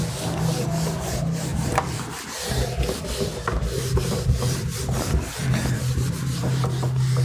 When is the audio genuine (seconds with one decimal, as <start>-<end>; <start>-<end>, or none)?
0.0-1.5; 2.0-3.3; 6.2-7.2